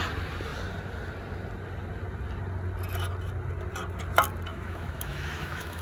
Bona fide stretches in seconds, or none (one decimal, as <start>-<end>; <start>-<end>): 0.0-4.5